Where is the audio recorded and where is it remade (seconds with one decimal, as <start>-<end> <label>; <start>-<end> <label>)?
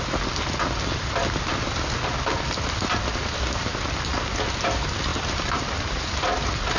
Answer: 0.0-5.1 recorded; 5.1-6.0 remade; 6.0-6.8 recorded